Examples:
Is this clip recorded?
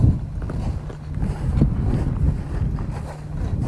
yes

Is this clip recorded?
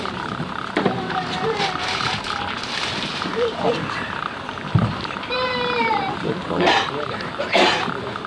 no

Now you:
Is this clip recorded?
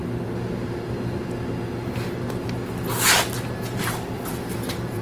yes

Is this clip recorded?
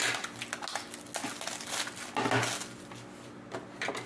yes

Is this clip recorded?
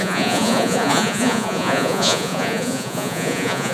no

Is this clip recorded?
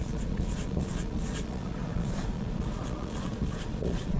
no